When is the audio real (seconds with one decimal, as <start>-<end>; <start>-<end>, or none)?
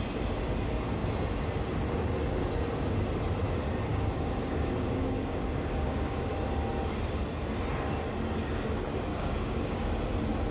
0.0-3.9; 6.3-9.1; 9.9-10.5